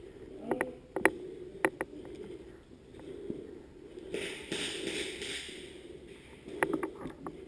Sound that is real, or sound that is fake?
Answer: real